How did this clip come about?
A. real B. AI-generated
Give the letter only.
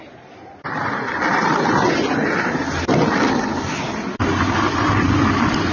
A